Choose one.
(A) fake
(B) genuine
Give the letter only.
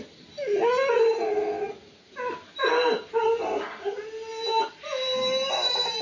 B